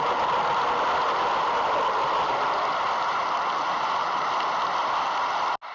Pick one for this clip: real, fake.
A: real